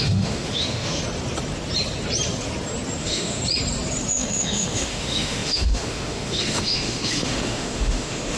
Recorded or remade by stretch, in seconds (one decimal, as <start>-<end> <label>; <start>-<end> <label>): 0.0-1.0 remade; 1.0-3.0 recorded; 3.0-3.4 remade; 3.4-4.1 recorded; 4.1-8.4 remade